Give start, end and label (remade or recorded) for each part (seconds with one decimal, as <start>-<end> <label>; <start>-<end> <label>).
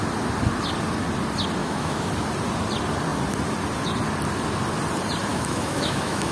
0.0-1.6 recorded; 1.6-2.1 remade; 2.1-5.3 recorded; 5.3-6.3 remade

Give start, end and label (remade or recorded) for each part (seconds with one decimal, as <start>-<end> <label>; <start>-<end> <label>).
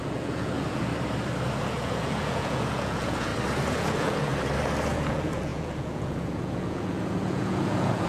0.0-0.9 remade; 0.9-1.6 recorded; 1.6-3.3 remade; 3.3-3.8 recorded; 3.8-4.3 remade; 4.3-4.9 recorded; 4.9-8.1 remade